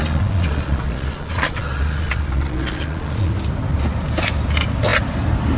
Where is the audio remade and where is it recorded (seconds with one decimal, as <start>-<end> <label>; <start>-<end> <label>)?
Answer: 0.0-3.3 remade; 3.3-5.6 recorded